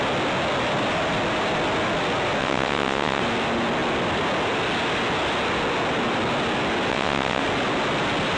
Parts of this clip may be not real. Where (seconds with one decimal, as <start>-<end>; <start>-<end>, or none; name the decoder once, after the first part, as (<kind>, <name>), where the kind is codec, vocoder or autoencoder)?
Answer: 2.4-3.2 (vocoder, WaveNeXt); 6.9-7.4